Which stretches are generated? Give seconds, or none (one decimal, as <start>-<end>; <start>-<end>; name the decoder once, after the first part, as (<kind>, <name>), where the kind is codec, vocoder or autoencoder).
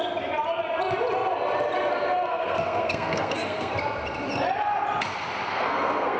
2.3-3.7 (codec, SNAC); 5.5-6.2